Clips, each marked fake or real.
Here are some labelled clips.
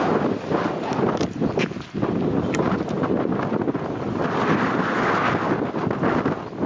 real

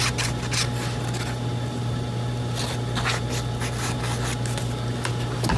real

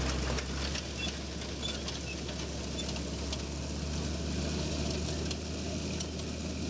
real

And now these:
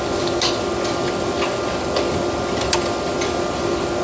real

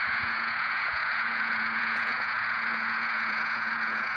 fake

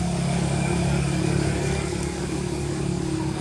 fake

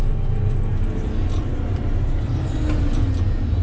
real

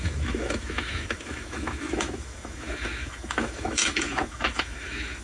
fake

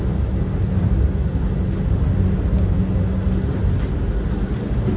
real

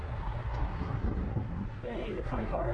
fake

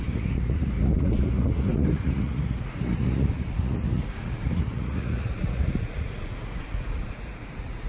fake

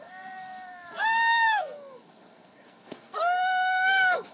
fake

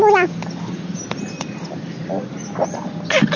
real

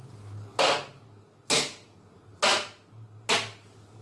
real